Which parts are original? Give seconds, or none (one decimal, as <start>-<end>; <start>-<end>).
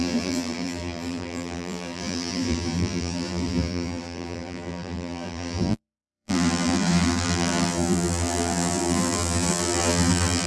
none